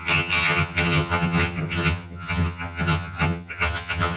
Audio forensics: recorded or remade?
remade